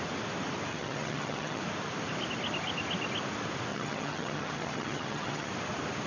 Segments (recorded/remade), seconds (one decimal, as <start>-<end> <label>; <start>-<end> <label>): 0.0-0.7 recorded; 0.7-1.6 remade; 1.6-3.7 recorded; 3.7-5.5 remade; 5.5-6.1 recorded